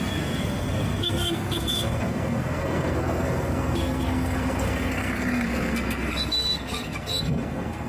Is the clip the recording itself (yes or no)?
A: no